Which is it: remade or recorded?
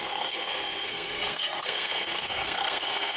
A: remade